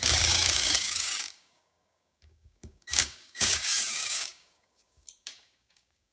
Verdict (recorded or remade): remade